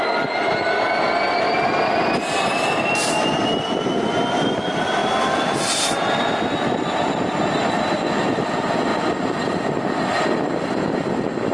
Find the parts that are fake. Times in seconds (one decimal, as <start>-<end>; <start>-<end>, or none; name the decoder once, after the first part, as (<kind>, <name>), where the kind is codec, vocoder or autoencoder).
none